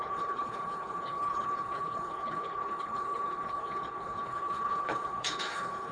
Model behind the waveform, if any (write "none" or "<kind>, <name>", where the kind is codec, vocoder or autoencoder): codec, HILCodec